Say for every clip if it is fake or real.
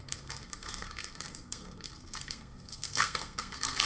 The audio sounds fake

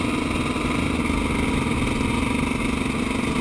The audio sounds real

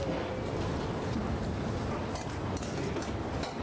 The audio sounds real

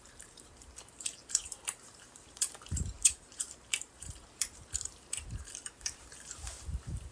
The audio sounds fake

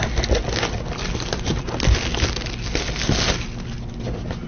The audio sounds real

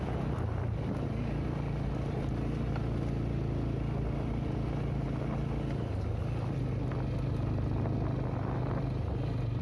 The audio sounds real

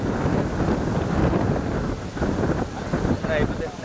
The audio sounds real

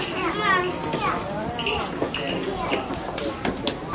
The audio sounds real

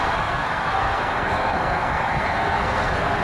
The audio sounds fake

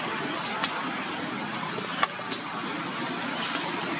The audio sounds real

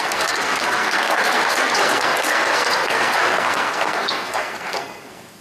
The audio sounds fake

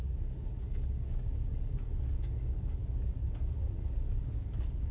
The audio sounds fake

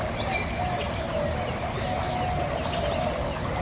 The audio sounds real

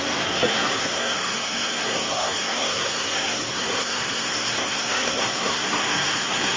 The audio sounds fake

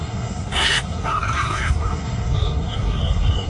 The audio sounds fake